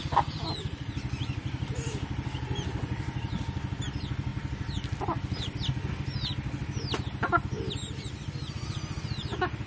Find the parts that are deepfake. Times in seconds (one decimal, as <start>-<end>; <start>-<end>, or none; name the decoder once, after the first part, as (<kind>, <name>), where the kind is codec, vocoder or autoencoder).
none